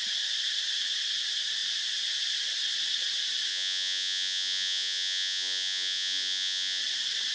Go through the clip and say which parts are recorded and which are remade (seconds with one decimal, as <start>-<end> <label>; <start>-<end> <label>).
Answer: 0.0-3.5 recorded; 3.5-6.8 remade; 6.8-7.3 recorded

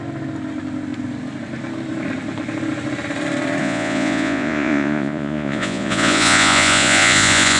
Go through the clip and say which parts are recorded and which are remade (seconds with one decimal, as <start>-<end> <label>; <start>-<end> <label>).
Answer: 0.0-3.6 recorded; 3.6-7.6 remade

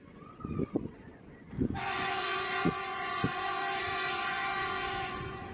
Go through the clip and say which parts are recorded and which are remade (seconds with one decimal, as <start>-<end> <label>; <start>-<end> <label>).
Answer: 0.0-5.5 remade

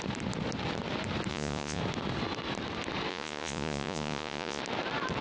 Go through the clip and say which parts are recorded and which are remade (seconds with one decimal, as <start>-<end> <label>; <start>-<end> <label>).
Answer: 0.0-1.3 recorded; 1.3-1.8 remade; 1.8-3.1 recorded; 3.1-4.6 remade; 4.6-5.2 recorded